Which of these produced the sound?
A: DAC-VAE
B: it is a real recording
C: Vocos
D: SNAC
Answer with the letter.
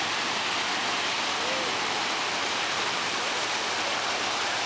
B